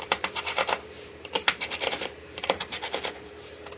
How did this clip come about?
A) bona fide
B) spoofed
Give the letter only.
B